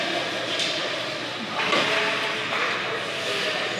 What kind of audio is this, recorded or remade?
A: recorded